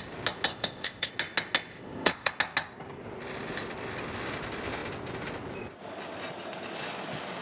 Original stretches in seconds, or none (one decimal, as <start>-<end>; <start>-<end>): 0.0-0.5; 1.1-1.7; 2.3-7.4